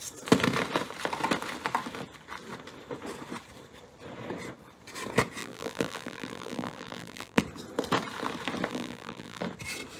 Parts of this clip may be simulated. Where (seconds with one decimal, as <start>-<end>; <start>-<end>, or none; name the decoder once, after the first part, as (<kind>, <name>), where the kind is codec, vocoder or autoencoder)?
5.4-7.4 (vocoder, BigVGAN v2); 8.7-9.4